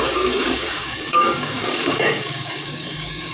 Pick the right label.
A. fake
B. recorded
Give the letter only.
A